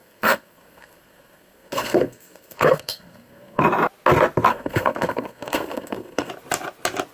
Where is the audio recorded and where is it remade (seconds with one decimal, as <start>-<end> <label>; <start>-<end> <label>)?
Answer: 0.0-3.6 remade; 3.6-4.5 recorded; 4.5-6.3 remade; 6.3-7.1 recorded